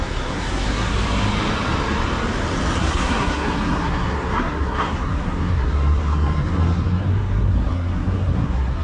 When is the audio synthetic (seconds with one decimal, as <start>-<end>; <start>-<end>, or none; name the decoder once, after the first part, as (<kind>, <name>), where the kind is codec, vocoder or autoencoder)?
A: 0.0-0.9 (codec, SNAC); 2.8-8.8